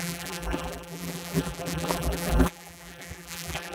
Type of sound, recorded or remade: remade